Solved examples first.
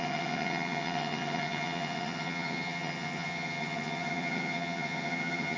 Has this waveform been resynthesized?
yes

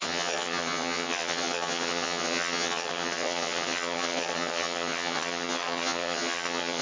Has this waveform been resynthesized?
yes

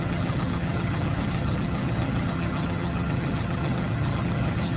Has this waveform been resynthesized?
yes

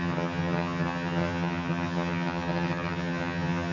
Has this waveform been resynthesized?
yes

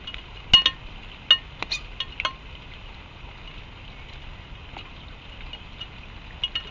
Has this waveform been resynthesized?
no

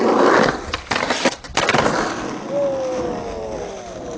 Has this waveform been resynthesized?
no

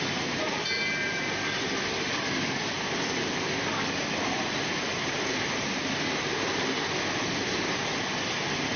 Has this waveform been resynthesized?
no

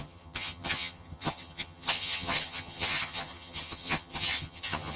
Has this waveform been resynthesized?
yes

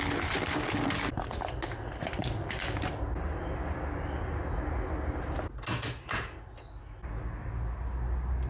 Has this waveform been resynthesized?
no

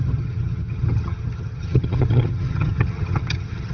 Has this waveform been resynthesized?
yes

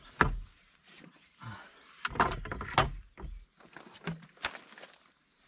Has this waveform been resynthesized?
no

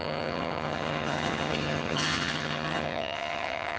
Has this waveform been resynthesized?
yes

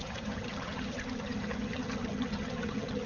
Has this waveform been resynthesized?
yes